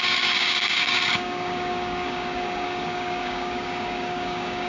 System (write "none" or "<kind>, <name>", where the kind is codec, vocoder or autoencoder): codec, DAC